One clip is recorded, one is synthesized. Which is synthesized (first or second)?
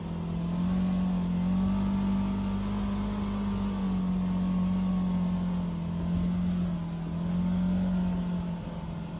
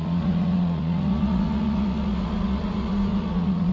second